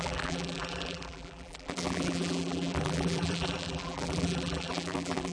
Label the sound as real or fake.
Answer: fake